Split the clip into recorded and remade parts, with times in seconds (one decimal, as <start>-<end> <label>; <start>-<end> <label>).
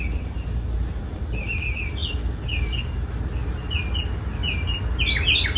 0.0-5.6 recorded